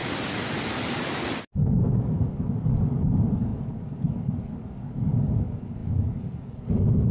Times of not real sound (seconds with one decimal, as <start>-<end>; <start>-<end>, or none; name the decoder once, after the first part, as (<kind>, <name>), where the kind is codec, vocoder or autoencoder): 1.8-7.1 (codec, DAC)